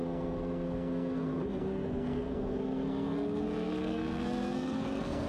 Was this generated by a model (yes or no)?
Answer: yes